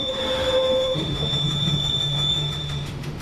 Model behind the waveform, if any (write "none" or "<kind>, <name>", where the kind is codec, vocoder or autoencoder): autoencoder, DAC-VAE